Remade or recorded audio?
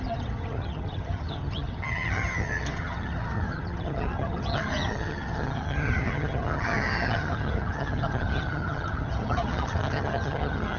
remade